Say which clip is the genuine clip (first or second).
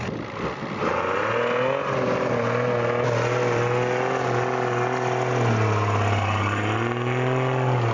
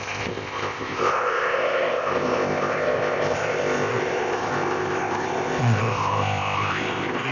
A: first